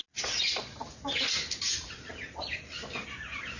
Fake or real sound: real